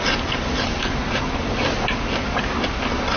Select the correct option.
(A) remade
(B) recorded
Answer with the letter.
B